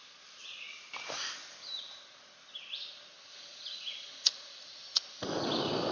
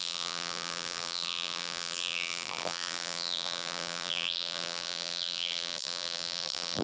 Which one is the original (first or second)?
first